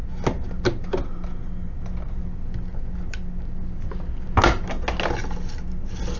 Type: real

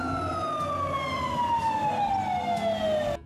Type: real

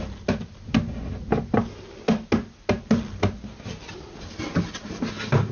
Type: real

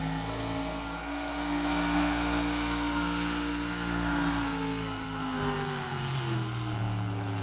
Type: fake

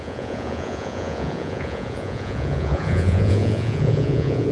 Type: fake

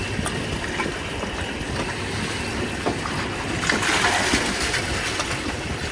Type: real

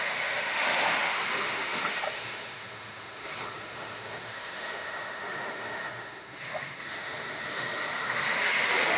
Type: fake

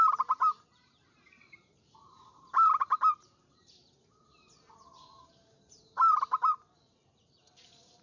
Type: fake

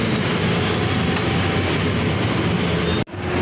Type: real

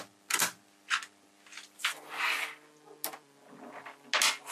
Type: real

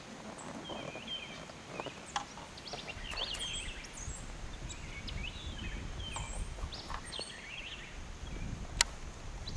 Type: real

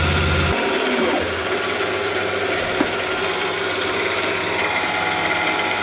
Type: real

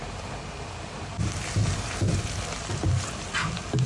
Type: fake